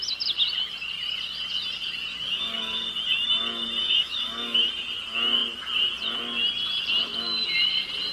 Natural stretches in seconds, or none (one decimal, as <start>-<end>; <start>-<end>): 0.0-2.1; 2.9-3.8; 4.7-8.1